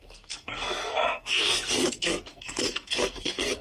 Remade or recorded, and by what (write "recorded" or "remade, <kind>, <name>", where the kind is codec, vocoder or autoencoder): remade, codec, SNAC